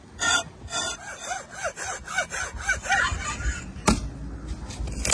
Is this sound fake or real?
real